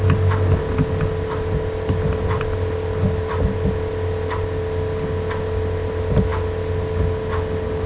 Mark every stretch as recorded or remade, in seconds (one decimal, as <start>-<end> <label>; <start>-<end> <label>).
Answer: 0.0-7.9 recorded